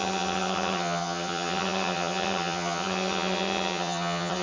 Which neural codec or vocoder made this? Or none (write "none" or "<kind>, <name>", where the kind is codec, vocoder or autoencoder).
vocoder, HiFi-GAN